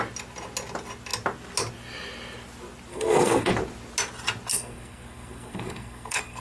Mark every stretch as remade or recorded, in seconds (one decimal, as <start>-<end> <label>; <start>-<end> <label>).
0.0-2.9 recorded; 2.9-3.5 remade; 3.5-4.5 recorded; 4.5-6.4 remade